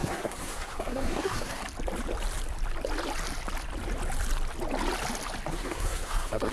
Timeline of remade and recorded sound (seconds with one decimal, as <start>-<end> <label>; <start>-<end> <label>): 0.0-1.6 remade; 1.6-5.5 recorded; 5.5-6.5 remade

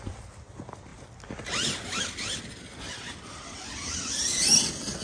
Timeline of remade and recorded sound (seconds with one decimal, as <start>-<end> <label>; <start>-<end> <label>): 0.0-5.0 recorded

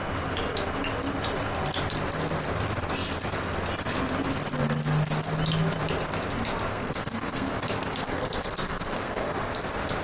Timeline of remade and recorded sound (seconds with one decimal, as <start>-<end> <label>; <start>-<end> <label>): 0.0-6.7 recorded; 6.7-7.5 remade; 7.5-7.9 recorded; 7.9-9.4 remade; 9.4-10.0 recorded

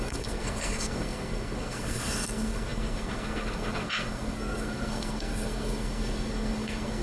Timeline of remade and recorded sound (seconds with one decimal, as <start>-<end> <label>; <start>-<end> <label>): 0.0-7.0 remade

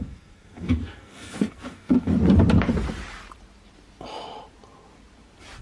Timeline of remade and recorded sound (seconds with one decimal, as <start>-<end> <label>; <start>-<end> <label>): 0.0-2.1 remade; 2.1-5.6 recorded

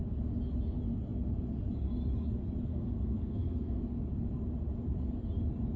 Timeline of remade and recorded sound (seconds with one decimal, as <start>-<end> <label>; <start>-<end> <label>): 0.0-2.7 recorded; 2.7-3.8 remade; 3.8-5.8 recorded